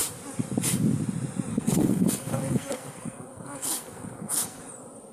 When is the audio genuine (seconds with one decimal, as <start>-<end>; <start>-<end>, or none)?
0.0-1.5; 4.6-5.1